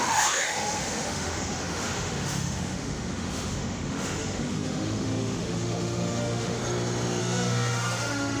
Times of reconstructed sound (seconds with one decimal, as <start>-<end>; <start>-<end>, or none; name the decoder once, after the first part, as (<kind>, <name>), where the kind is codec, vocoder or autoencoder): 0.0-6.6 (autoencoder, DAC-VAE); 7.2-8.4